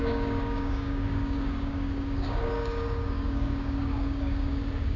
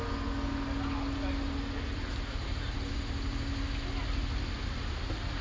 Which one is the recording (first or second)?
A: second